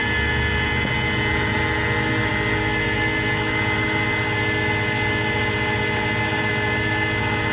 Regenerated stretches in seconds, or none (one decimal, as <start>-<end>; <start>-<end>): none